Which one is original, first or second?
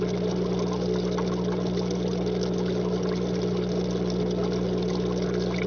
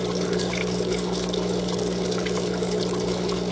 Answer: first